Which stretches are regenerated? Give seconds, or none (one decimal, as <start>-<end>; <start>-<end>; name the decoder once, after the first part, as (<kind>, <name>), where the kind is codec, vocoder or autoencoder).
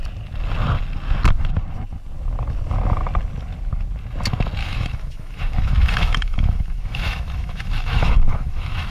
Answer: 4.6-8.9 (autoencoder, DAC-VAE)